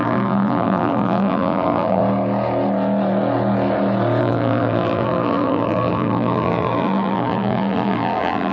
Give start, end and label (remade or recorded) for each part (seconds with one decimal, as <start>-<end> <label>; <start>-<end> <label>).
0.0-2.0 remade; 2.0-4.2 recorded; 4.2-8.5 remade